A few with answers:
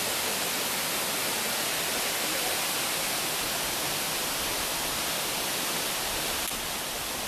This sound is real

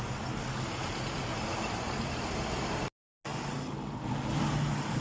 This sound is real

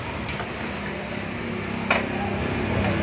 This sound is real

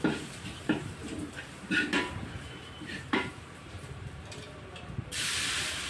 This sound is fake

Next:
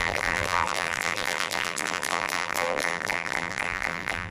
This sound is fake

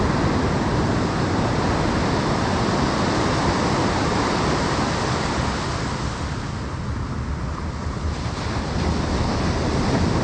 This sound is real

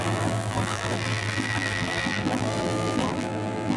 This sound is fake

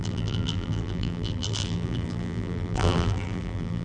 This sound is fake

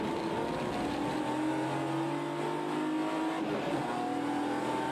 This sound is real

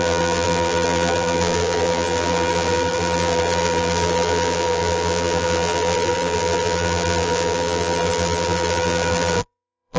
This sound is fake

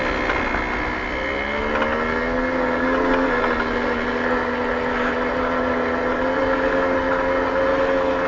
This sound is real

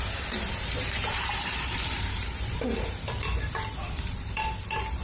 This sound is fake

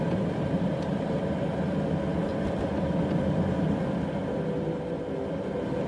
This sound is real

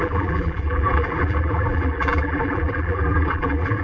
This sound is fake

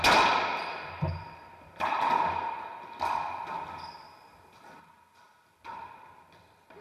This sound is real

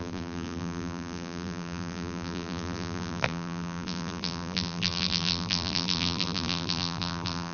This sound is fake